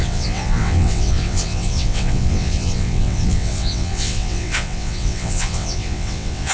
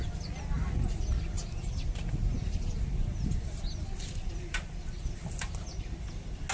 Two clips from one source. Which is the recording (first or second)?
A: second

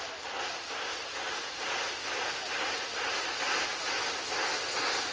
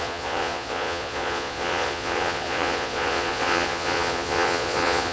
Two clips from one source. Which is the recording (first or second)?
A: first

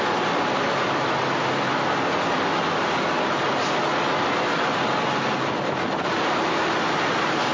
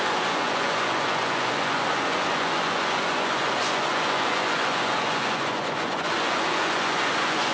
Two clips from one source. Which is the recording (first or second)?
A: first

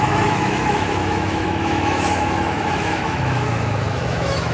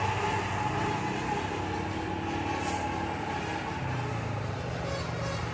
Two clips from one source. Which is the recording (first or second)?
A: second